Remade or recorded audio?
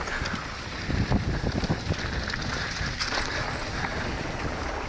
recorded